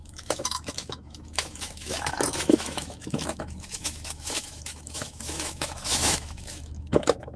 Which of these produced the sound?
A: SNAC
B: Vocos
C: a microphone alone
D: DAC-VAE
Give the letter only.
D